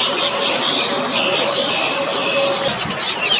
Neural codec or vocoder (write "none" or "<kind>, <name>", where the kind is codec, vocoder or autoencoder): none